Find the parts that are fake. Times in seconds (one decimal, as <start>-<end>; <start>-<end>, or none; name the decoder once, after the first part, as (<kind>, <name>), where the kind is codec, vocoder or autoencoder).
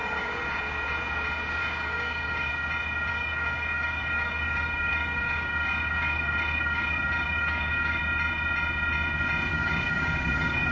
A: 0.0-0.6 (codec, DAC); 1.6-2.5; 3.1-8.0; 9.5-10.7